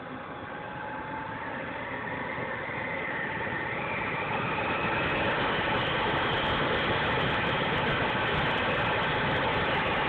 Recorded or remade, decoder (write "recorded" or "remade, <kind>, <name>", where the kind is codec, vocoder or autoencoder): recorded